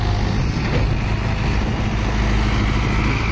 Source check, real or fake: real